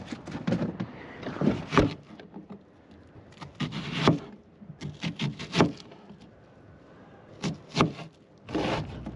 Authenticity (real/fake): real